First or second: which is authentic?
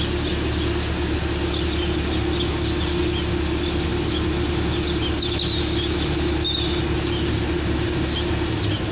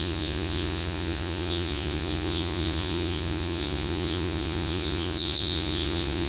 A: first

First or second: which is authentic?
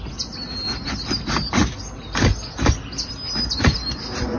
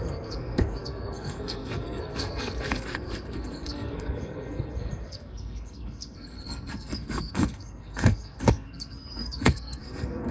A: first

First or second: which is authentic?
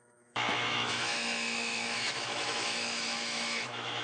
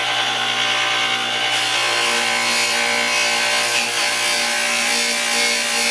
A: second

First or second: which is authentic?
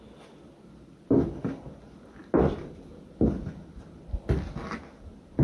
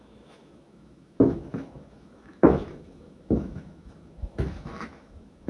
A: first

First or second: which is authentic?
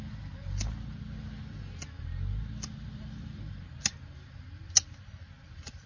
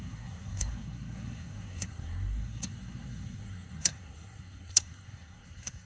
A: first